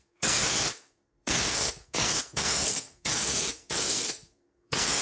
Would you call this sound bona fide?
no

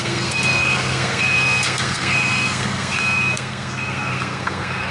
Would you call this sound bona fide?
no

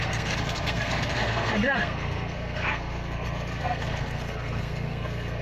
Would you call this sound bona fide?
no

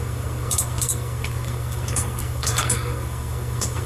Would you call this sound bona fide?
no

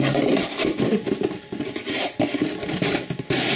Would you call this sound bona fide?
yes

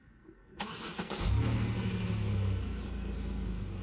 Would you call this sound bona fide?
no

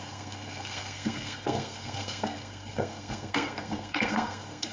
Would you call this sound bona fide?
no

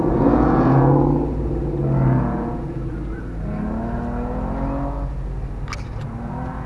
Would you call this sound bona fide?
yes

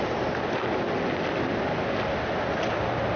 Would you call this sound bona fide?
yes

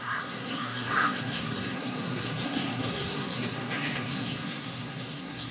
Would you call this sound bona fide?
no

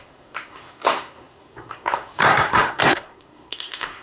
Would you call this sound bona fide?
no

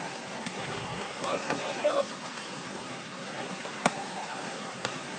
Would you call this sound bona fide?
no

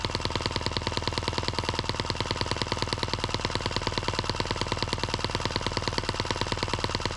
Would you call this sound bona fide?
yes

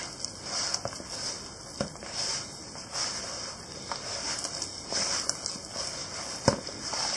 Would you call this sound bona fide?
yes